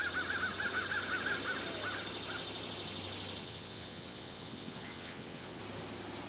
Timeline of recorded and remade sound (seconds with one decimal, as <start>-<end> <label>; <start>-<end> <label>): 0.0-3.4 recorded; 3.4-5.6 remade; 5.6-6.3 recorded